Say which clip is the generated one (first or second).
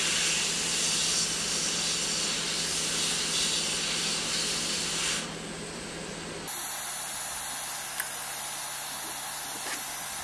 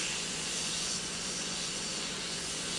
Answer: second